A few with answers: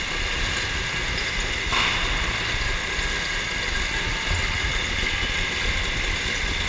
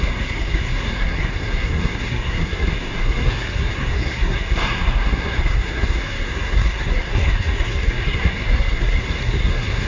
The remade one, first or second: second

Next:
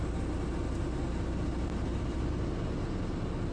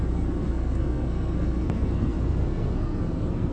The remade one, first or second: second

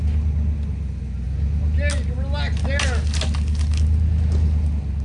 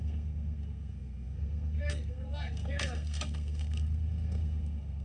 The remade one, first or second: second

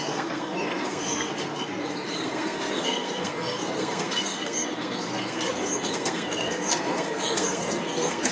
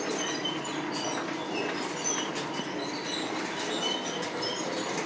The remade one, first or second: first